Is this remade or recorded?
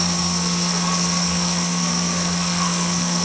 remade